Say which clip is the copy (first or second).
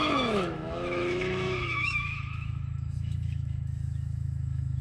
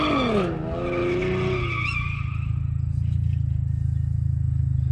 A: first